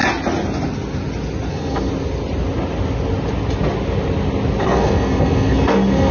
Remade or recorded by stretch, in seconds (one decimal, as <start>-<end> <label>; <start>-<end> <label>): 0.0-1.5 recorded; 1.5-1.9 remade; 1.9-4.6 recorded; 4.6-6.1 remade